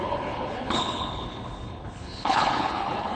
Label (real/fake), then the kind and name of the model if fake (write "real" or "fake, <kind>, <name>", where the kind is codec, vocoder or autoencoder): fake, codec, HILCodec